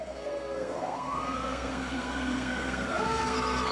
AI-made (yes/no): yes